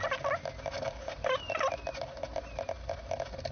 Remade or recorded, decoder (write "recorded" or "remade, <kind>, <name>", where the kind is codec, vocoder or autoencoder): recorded